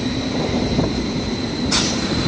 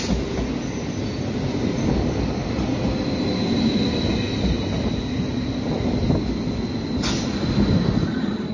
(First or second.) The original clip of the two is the second